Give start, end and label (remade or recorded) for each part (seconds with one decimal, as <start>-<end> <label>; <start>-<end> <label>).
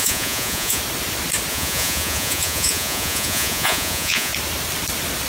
0.0-0.8 remade; 0.8-1.5 recorded; 1.5-4.3 remade; 4.3-5.3 recorded